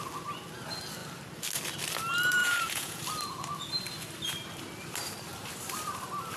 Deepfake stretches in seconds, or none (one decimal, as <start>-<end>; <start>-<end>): 2.4-3.0